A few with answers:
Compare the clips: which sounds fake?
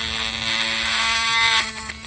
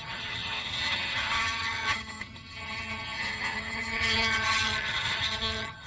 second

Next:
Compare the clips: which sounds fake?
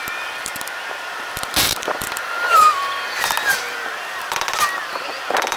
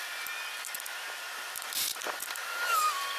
first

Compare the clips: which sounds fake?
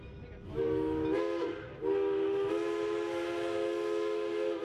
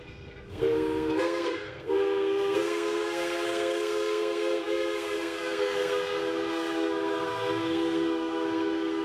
second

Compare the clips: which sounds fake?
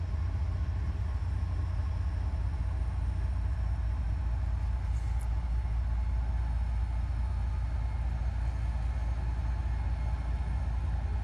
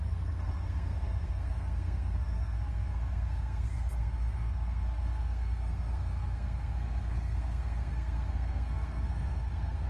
second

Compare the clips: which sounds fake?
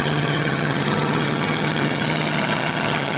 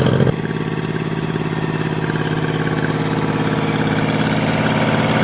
first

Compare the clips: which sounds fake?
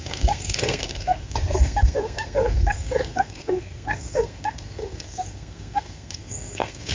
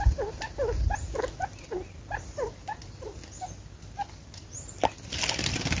first